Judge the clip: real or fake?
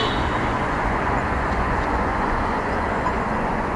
fake